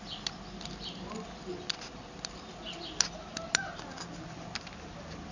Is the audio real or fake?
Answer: real